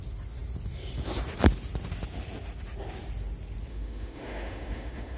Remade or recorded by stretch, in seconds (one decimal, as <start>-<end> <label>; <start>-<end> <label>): 0.0-3.7 recorded; 3.7-5.2 remade